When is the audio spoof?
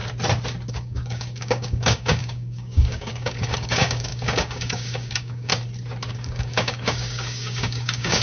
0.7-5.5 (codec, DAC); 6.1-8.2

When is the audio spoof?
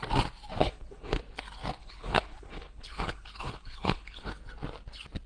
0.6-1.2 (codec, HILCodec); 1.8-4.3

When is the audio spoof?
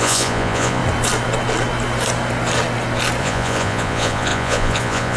0.0-0.8 (vocoder, Vocos); 3.2-5.2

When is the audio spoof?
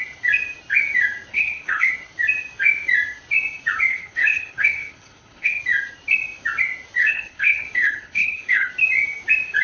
1.3-1.9 (codec, HILCodec); 3.9-5.6; 7.0-8.7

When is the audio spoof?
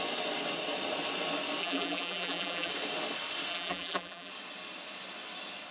1.6-2.7 (vocoder, BigVGAN v2); 3.5-4.3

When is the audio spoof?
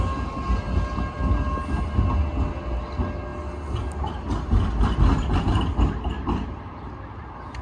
none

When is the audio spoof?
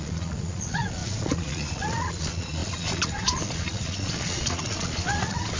0.0-5.6 (vocoder, Vocos)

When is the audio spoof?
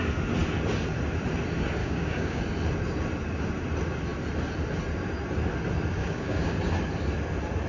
1.8-2.4 (codec, DAC); 6.0-6.6